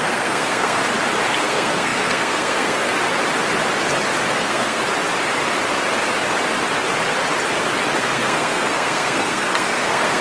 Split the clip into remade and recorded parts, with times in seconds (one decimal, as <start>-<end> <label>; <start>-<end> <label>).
0.0-0.8 remade; 0.8-1.4 recorded; 1.4-2.9 remade; 2.9-4.3 recorded; 4.3-4.8 remade; 4.8-8.0 recorded; 8.0-10.2 remade